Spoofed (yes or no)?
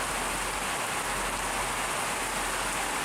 no